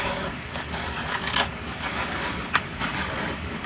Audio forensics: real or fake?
fake